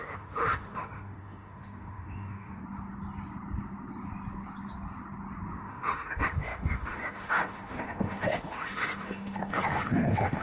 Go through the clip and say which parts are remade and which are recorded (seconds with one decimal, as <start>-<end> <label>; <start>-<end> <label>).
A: 0.0-2.6 remade; 2.6-5.5 recorded; 5.5-10.4 remade